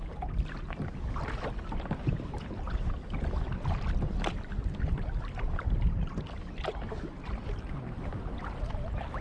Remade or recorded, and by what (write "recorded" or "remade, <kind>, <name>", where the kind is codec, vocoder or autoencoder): recorded